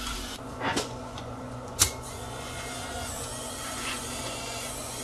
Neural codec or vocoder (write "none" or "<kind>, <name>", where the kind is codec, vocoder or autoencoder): vocoder, Vocos